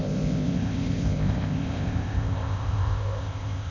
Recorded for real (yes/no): no